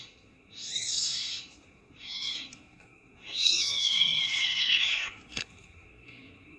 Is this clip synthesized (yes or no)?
yes